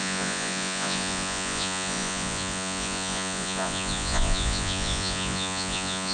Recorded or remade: remade